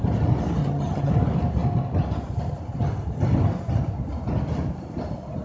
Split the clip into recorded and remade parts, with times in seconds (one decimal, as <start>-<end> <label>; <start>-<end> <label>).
0.0-0.6 recorded; 0.6-1.1 remade; 1.1-5.4 recorded